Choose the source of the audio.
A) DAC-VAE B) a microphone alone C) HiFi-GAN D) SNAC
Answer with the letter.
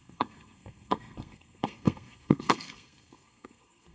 D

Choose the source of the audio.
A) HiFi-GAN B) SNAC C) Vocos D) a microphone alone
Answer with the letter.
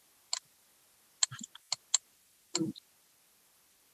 D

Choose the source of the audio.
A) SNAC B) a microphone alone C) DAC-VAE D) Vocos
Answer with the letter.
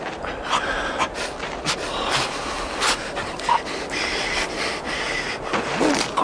B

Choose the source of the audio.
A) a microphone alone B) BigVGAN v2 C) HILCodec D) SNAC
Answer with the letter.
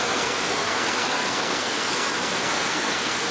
D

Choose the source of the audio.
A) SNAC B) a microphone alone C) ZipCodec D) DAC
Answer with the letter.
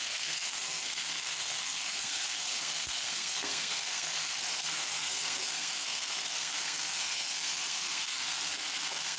A